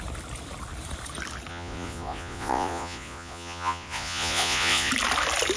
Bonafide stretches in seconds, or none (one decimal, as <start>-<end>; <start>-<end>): 0.0-1.5; 4.9-5.6